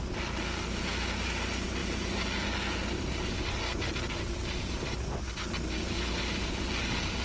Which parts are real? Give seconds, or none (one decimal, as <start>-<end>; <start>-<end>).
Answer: 0.0-7.2